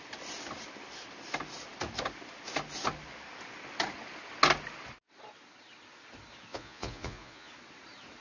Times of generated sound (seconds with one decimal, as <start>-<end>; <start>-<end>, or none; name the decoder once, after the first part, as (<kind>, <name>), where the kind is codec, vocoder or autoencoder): 6.5-7.5 (vocoder, Vocos)